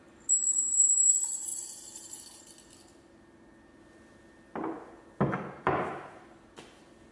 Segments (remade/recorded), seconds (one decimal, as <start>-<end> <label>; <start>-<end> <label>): 0.0-0.4 recorded; 0.4-1.1 remade; 1.1-7.1 recorded